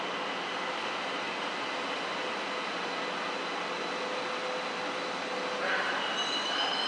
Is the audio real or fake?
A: real